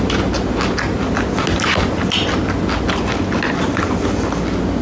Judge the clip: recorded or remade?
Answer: recorded